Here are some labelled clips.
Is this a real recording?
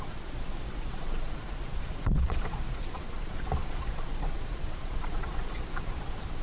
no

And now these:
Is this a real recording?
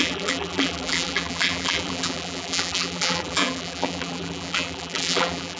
no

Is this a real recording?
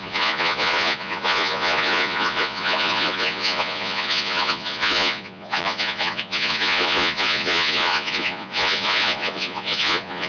no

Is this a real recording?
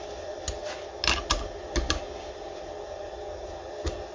yes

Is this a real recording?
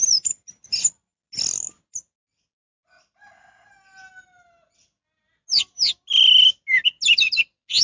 yes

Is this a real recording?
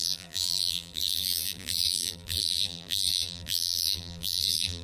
no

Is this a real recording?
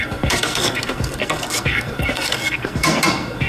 no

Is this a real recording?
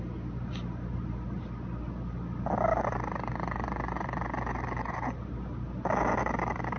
yes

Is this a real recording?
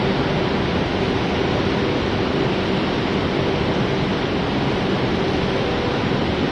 yes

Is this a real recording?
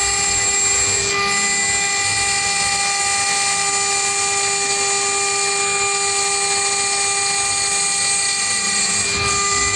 yes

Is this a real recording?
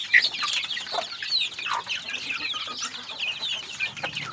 yes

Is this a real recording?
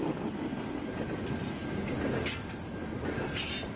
yes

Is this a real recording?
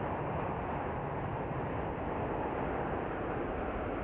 yes